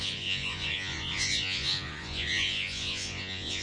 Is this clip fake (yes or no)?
yes